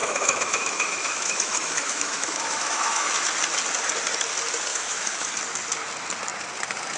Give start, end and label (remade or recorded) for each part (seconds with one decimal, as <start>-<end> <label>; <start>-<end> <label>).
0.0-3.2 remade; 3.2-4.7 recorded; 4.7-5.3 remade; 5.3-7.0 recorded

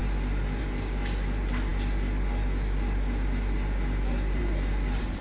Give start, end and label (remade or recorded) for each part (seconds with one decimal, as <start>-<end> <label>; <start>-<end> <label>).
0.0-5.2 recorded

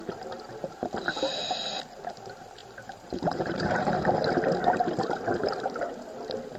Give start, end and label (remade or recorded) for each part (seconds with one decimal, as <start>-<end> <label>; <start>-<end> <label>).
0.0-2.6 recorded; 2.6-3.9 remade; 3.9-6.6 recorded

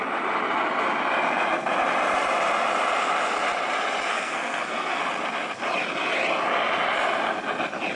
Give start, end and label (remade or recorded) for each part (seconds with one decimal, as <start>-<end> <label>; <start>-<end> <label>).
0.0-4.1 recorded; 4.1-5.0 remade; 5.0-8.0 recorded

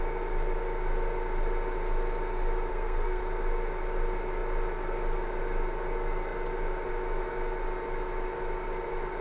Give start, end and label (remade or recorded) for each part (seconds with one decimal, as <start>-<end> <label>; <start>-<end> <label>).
0.0-2.7 recorded; 2.7-3.2 remade; 3.2-9.2 recorded